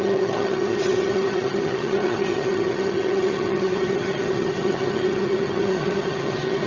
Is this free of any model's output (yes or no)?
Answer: no